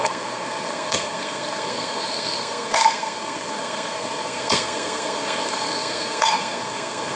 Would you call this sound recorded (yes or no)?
no